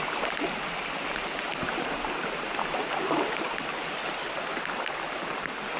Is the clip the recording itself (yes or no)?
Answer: yes